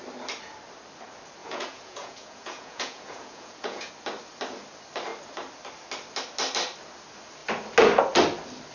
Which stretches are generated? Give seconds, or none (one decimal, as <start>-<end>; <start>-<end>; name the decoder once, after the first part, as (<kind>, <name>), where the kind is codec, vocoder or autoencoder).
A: 1.4-3.9 (vocoder, Vocos)